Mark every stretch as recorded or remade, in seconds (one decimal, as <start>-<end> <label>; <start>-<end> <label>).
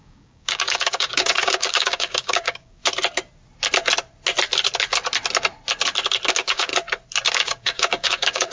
0.0-2.8 remade; 2.8-6.3 recorded; 6.3-6.7 remade; 6.7-7.3 recorded; 7.3-8.5 remade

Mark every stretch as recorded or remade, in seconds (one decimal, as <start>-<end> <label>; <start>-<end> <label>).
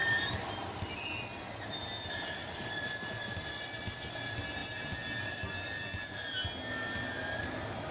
0.0-7.9 recorded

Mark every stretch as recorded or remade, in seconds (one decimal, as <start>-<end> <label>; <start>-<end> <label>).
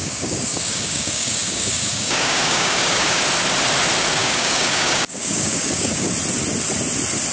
0.0-3.2 remade; 3.2-4.2 recorded; 4.2-6.1 remade; 6.1-7.3 recorded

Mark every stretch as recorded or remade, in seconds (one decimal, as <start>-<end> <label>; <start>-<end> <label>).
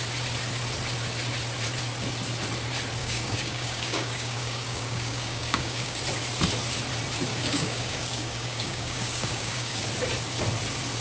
0.0-3.0 recorded; 3.0-6.0 remade; 6.0-7.3 recorded; 7.3-9.8 remade; 9.8-11.0 recorded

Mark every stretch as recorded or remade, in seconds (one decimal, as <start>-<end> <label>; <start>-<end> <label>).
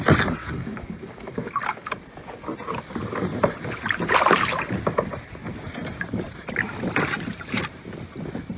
0.0-0.4 recorded; 0.4-1.9 remade; 1.9-8.6 recorded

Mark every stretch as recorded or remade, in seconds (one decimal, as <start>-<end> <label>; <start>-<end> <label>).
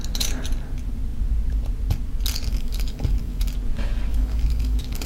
0.0-2.5 recorded; 2.5-3.5 remade; 3.5-4.1 recorded; 4.1-5.1 remade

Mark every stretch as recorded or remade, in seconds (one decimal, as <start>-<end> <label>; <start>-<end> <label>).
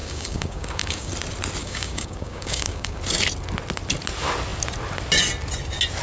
0.0-1.1 remade; 1.1-1.6 recorded; 1.6-3.0 remade; 3.0-6.0 recorded